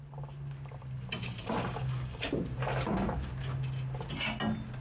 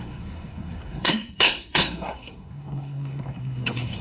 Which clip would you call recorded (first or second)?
first